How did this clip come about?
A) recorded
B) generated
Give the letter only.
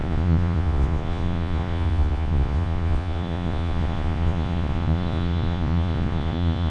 B